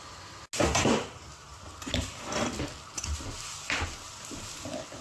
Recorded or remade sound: recorded